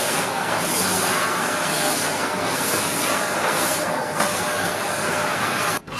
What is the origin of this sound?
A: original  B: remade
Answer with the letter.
B